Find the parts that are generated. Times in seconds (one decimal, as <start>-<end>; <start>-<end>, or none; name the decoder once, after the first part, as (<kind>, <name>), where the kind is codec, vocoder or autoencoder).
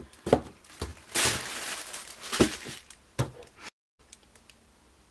none